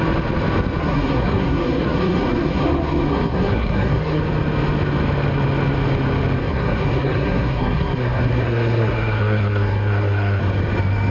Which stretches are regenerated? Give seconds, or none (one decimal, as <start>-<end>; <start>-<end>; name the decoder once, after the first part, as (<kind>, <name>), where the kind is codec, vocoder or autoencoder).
0.8-4.2 (codec, SNAC); 6.4-10.4